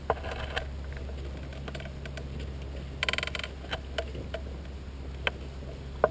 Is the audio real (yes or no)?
yes